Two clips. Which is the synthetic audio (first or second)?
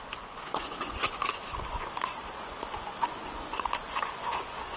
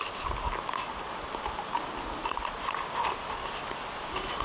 first